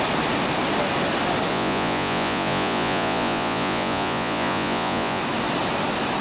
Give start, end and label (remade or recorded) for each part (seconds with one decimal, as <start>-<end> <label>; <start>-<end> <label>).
0.0-1.5 recorded; 1.5-5.2 remade; 5.2-6.2 recorded